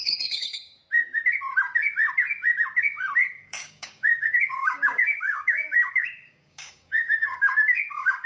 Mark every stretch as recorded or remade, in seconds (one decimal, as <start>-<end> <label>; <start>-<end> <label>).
0.0-0.8 remade; 0.8-3.3 recorded; 3.3-8.3 remade